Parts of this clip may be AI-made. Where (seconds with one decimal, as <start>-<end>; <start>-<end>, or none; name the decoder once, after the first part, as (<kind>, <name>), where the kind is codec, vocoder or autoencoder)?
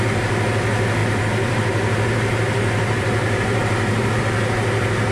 1.0-4.1 (vocoder, BigVGAN v2)